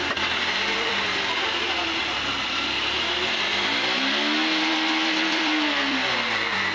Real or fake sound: fake